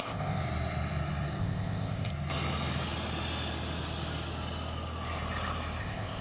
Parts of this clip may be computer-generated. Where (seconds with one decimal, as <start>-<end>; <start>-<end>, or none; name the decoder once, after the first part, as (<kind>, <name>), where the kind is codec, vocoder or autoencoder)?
0.0-0.4 (codec, ZipCodec); 1.4-2.1; 5.8-6.2